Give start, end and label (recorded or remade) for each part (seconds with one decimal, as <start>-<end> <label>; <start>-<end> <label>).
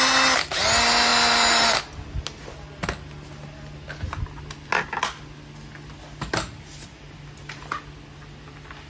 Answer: 0.0-8.9 recorded